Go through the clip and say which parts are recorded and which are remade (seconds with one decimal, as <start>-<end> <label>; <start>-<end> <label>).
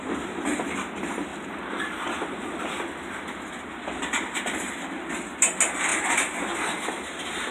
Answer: 0.0-7.5 recorded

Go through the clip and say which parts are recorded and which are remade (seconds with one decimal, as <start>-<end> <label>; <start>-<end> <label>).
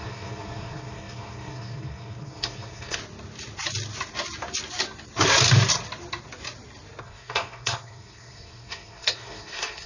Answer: 0.0-3.0 remade; 3.0-7.0 recorded; 7.0-9.9 remade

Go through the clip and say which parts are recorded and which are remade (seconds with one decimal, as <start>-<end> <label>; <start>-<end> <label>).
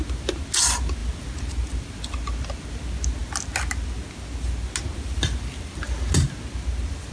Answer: 0.0-7.1 recorded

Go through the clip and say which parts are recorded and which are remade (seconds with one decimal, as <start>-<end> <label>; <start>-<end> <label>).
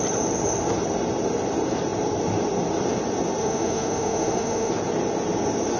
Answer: 0.0-3.4 recorded; 3.4-4.7 remade; 4.7-5.8 recorded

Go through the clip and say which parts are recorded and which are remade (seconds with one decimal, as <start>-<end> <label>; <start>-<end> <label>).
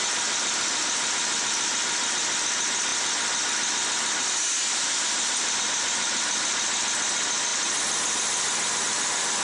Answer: 0.0-9.4 recorded